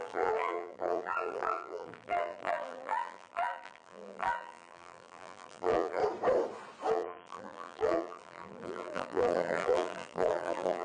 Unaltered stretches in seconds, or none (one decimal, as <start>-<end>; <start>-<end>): 6.0-6.9